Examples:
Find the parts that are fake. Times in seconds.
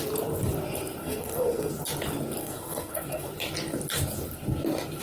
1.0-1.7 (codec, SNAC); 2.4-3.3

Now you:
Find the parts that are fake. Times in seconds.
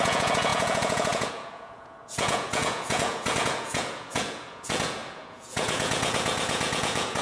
0.0-7.2 (vocoder, Vocos)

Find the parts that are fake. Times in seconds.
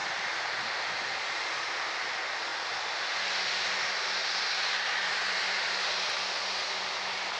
none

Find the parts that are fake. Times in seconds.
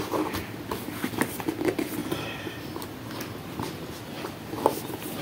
none